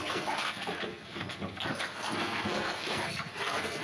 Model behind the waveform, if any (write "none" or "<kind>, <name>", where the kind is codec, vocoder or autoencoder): codec, SNAC